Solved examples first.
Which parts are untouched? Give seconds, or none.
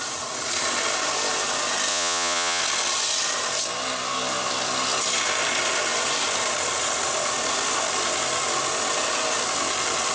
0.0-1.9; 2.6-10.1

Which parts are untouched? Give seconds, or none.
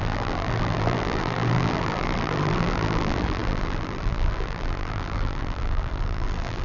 none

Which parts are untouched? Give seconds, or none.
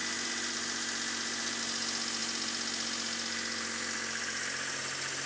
0.0-5.3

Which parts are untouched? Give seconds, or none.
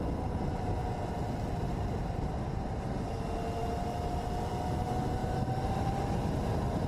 0.0-5.2; 5.9-6.9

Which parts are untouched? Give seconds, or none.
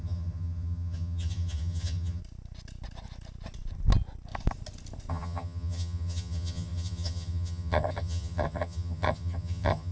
2.2-5.1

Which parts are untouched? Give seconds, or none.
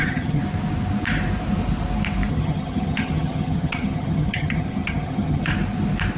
0.4-2.3; 5.5-6.2